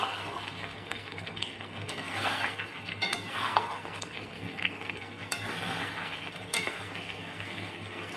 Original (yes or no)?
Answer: no